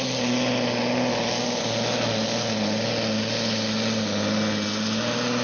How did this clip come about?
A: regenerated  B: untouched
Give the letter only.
B